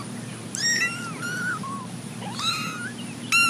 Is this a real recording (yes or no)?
yes